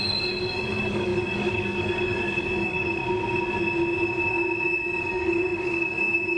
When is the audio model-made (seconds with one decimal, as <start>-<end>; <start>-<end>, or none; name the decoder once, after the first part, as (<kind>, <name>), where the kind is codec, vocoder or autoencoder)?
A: 0.0-3.0 (codec, DAC); 5.0-6.4